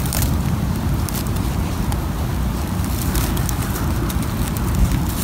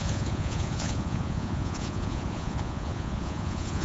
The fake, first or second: second